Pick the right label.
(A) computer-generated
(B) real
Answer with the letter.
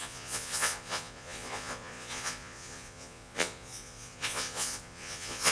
A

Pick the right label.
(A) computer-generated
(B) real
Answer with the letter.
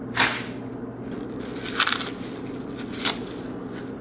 B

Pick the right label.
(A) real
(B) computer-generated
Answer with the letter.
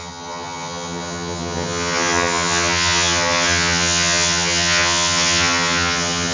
B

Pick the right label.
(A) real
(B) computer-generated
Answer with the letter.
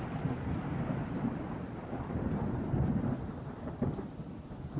B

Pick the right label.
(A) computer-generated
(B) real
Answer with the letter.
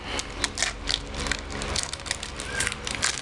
B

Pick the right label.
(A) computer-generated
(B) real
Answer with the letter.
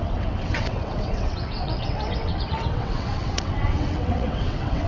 A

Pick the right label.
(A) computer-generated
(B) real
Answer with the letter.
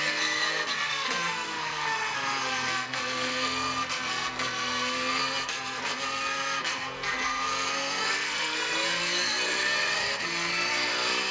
A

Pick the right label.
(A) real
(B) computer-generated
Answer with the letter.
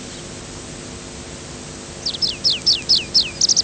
A